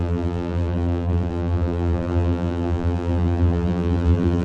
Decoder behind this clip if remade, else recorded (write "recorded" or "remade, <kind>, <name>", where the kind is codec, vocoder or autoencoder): remade, vocoder, BigVGAN v2